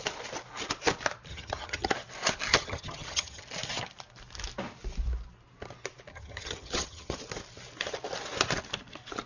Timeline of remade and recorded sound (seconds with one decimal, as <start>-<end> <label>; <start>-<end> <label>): 0.0-1.3 recorded; 1.3-1.9 remade; 1.9-2.5 recorded; 2.5-3.4 remade; 3.4-6.1 recorded; 6.1-7.2 remade; 7.2-9.3 recorded